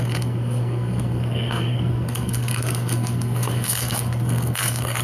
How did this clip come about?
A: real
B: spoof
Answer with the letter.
B